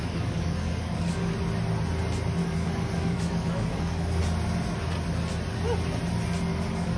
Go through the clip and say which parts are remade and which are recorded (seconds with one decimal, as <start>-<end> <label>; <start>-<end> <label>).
0.0-1.3 remade; 1.3-2.4 recorded; 2.4-4.2 remade; 4.2-6.5 recorded; 6.5-7.0 remade

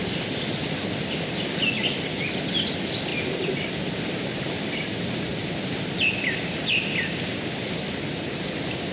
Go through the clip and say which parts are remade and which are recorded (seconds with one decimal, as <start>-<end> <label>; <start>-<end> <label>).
0.0-1.5 remade; 1.5-3.1 recorded; 3.1-8.3 remade; 8.3-8.9 recorded

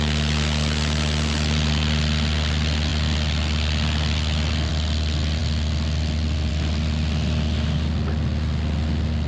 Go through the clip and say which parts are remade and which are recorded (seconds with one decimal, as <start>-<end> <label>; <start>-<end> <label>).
0.0-9.3 recorded

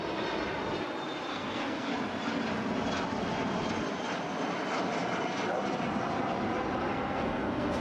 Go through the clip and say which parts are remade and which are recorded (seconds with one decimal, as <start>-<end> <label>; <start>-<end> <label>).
0.0-1.3 recorded; 1.3-1.9 remade; 1.9-6.9 recorded; 6.9-7.8 remade

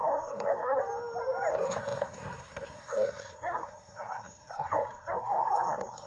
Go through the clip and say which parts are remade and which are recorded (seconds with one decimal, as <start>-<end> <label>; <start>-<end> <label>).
0.0-0.8 remade; 0.8-1.5 recorded; 1.5-6.1 remade

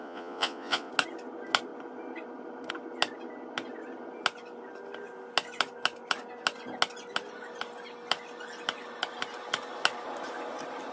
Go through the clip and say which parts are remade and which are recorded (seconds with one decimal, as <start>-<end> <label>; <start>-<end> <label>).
0.0-0.9 remade; 0.9-10.9 recorded

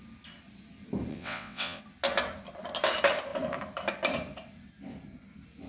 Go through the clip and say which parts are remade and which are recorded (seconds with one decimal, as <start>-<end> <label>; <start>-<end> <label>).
0.0-1.1 recorded; 1.1-1.8 remade; 1.8-5.7 recorded

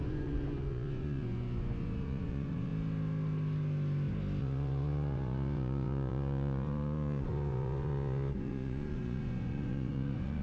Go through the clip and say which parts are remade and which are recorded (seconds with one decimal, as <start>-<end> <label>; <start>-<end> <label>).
0.0-2.7 remade; 2.7-4.4 recorded; 4.4-10.4 remade